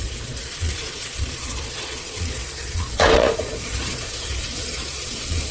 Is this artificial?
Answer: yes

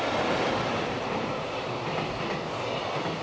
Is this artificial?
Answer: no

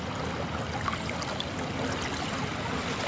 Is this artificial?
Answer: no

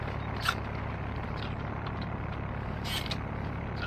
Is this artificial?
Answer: no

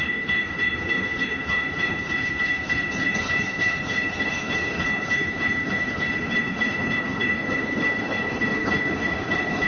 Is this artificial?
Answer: yes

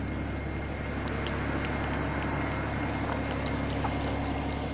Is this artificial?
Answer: no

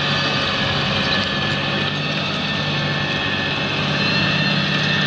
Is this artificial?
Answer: no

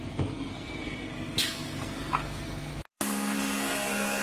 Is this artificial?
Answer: yes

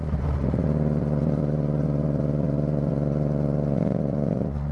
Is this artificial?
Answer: yes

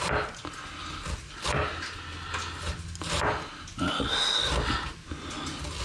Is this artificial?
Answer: no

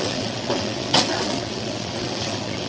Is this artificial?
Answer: yes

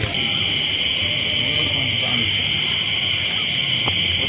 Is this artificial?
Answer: no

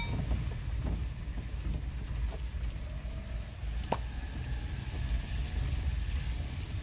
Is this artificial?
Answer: no